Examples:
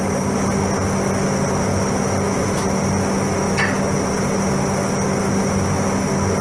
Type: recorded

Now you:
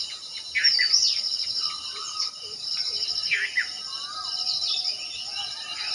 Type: recorded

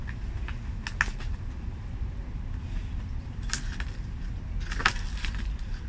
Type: recorded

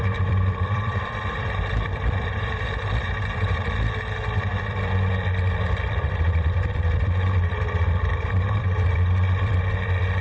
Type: remade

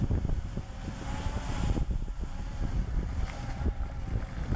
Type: recorded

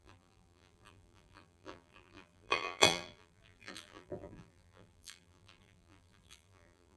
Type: remade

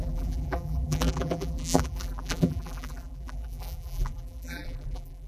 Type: remade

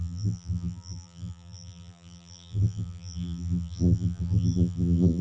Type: remade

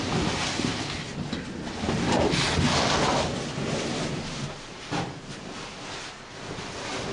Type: recorded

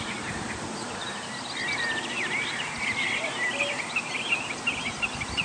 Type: remade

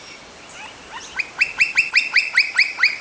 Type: recorded